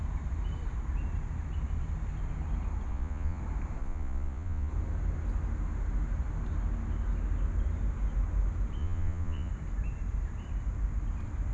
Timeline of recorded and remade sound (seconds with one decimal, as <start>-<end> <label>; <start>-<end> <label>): 0.0-2.9 recorded; 2.9-3.4 remade; 3.4-3.8 recorded; 3.8-4.7 remade; 4.7-8.8 recorded; 8.8-9.5 remade; 9.5-11.5 recorded